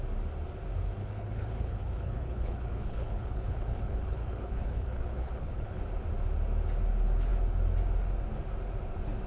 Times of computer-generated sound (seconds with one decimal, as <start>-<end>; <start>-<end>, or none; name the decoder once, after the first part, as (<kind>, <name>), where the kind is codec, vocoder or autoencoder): 1.0-5.8 (codec, HILCodec)